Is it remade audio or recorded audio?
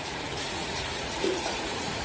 remade